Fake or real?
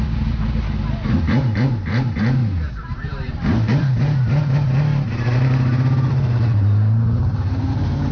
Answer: fake